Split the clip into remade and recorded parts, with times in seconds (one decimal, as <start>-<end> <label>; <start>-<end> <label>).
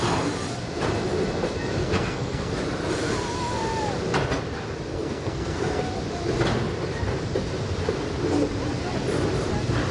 0.0-1.8 recorded; 1.8-2.5 remade; 2.5-4.9 recorded; 4.9-5.8 remade; 5.8-9.9 recorded